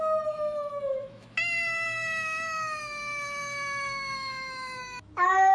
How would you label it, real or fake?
fake